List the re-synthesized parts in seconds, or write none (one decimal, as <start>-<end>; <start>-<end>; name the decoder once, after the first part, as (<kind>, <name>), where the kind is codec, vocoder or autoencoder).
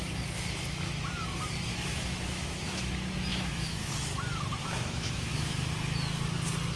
1.7-2.9 (autoencoder, DAC-VAE); 3.3-3.9; 4.6-5.7